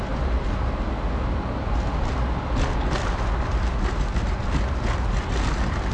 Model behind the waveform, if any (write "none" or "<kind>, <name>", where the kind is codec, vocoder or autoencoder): none